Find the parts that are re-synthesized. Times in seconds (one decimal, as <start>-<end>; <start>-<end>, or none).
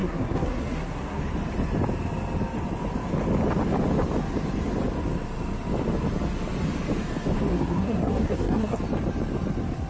0.0-1.2; 7.5-8.8